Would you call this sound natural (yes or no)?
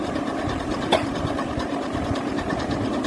no